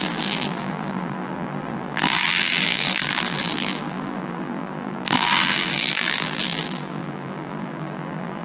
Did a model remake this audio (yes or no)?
yes